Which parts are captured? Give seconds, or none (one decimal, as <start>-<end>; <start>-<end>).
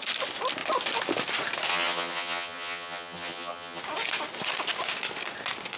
0.0-1.7; 3.8-5.8